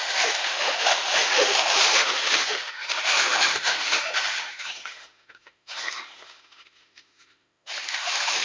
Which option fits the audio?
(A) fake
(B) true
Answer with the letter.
A